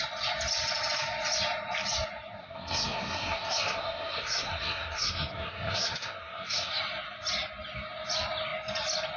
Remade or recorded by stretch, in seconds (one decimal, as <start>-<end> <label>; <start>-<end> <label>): 0.0-2.4 recorded; 2.4-6.7 remade; 6.7-9.2 recorded